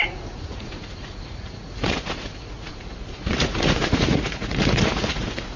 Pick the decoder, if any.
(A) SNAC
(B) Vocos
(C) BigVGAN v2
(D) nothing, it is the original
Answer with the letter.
B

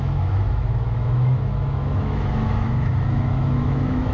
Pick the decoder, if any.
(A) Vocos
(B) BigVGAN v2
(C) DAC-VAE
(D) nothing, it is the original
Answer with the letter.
C